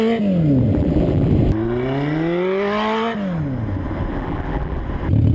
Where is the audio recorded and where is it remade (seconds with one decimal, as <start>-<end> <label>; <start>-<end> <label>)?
0.0-0.7 recorded; 0.7-1.3 remade; 1.3-4.1 recorded; 4.1-4.8 remade; 4.8-5.3 recorded